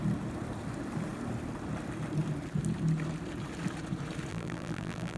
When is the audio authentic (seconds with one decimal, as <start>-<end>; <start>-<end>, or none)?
0.0-4.3